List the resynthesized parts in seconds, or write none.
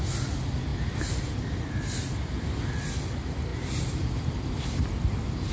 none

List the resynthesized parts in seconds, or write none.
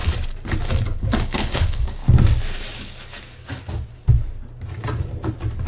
1.0-2.0 (codec, DAC)